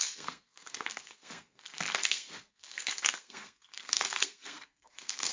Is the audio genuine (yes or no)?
no